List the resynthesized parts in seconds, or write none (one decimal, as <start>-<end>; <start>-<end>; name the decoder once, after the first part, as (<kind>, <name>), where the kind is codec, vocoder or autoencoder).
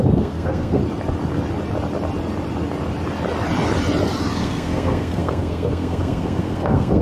0.0-0.8 (codec, SNAC); 4.4-7.0